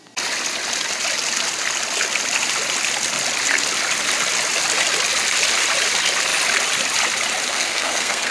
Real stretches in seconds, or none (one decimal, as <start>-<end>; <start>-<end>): 0.0-7.5